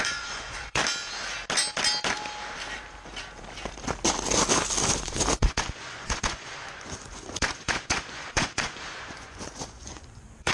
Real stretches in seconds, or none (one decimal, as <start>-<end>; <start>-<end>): 0.8-4.9